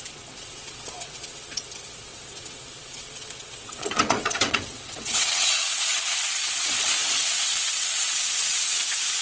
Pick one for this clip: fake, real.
fake